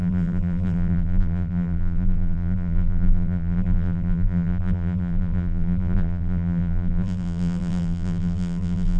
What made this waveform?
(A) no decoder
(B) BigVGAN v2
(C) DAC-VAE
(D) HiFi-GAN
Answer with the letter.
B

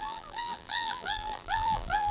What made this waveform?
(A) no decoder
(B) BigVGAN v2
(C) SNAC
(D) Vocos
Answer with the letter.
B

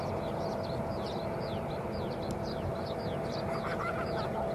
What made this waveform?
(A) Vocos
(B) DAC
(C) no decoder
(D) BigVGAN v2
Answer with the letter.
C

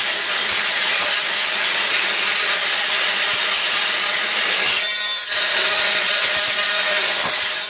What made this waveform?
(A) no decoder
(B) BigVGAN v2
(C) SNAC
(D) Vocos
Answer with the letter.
A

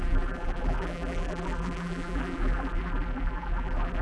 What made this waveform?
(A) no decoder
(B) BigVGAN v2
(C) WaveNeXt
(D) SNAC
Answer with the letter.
B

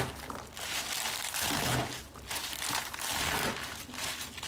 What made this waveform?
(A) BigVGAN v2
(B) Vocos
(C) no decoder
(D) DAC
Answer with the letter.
C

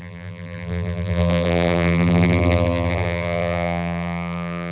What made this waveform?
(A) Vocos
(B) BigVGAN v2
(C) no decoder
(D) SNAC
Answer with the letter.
B